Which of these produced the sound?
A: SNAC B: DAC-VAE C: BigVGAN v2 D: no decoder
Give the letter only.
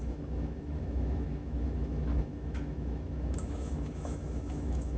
B